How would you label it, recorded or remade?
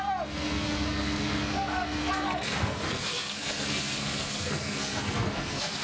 remade